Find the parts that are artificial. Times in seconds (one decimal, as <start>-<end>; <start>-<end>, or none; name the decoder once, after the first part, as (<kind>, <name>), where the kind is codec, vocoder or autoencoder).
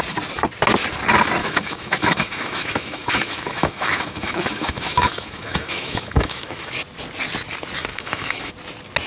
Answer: 1.4-6.7 (autoencoder, DAC-VAE); 7.9-8.5